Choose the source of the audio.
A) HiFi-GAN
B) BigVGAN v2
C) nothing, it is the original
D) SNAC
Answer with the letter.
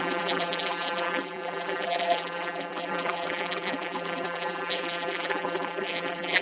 B